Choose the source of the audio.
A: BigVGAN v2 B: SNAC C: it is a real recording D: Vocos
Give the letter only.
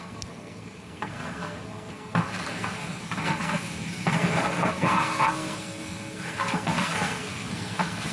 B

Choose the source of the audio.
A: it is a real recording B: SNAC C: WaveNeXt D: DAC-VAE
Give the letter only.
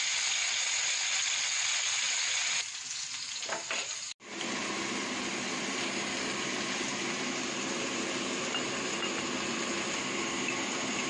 A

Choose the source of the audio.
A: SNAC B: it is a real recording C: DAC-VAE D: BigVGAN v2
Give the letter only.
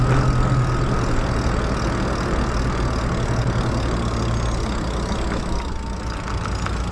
B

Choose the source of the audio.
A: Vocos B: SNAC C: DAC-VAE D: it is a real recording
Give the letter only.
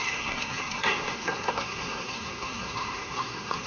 B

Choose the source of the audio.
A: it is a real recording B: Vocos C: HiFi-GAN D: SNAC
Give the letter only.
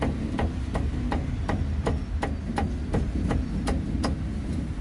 A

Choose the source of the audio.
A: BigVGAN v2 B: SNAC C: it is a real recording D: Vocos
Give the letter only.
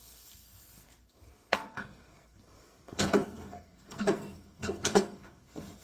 B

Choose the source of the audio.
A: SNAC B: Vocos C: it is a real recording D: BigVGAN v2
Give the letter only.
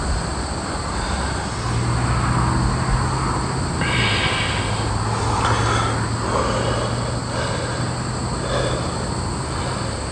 C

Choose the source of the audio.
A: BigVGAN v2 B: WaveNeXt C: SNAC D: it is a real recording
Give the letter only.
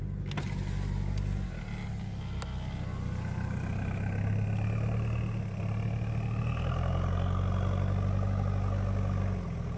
D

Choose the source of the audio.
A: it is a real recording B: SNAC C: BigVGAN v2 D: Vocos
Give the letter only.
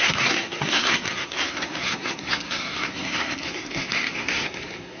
B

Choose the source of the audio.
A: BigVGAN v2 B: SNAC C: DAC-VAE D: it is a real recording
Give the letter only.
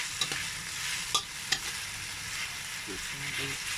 D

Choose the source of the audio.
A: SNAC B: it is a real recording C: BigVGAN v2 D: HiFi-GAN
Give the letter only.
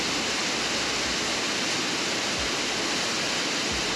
B